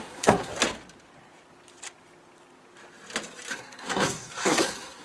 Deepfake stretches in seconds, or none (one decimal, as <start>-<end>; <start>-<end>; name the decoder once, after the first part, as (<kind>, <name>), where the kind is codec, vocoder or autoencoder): 0.0-0.5 (codec, SNAC); 3.5-5.0